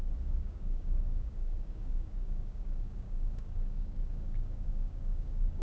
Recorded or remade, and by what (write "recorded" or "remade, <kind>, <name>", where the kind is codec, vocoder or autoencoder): remade, codec, DAC